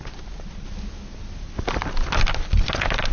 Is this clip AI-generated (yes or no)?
no